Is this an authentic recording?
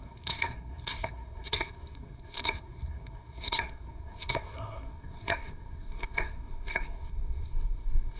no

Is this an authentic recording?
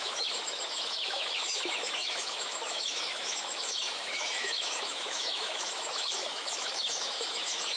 no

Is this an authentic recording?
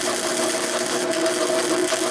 yes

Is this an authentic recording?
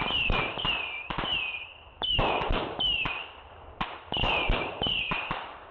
no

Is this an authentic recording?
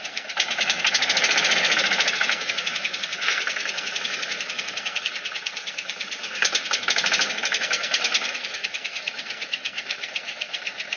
no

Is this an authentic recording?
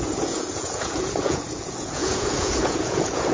no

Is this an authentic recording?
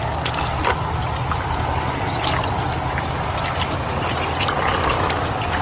yes